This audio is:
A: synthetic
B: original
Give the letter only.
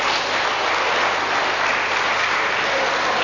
B